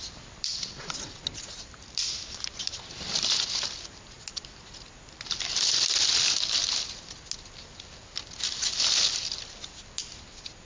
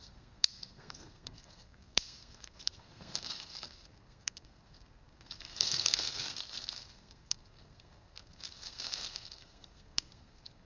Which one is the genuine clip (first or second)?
first